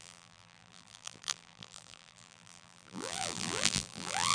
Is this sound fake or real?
fake